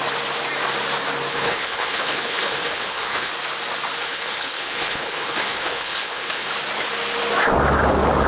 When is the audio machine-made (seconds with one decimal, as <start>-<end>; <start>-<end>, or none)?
1.3-3.3; 4.0-6.5

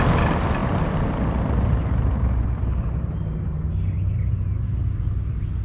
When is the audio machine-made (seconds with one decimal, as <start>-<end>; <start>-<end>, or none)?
none

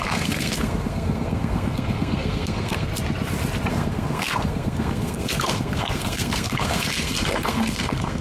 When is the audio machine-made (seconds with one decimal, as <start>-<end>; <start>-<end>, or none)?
0.0-2.9; 3.7-8.2

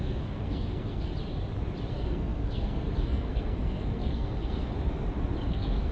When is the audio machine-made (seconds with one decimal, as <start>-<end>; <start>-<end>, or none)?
0.0-1.1; 1.9-4.7; 5.5-5.9

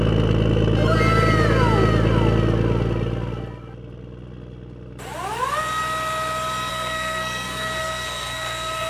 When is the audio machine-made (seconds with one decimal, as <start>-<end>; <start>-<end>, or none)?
6.7-8.9

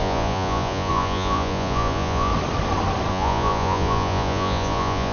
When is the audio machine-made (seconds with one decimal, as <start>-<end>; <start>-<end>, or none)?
0.0-2.3; 3.1-5.1